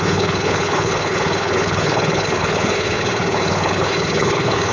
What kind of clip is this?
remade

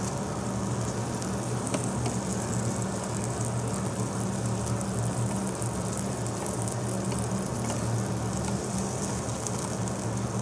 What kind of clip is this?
recorded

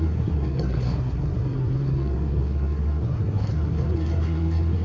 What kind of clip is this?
remade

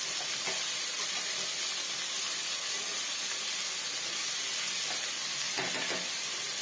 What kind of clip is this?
recorded